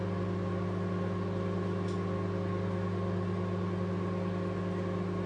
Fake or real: real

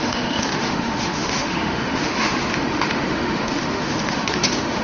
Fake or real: fake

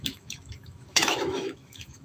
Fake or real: fake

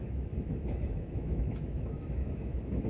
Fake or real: fake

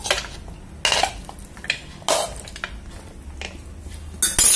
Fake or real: real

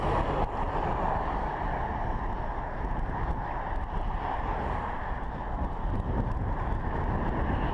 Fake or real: real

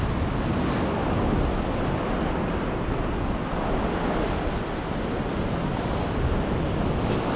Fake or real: real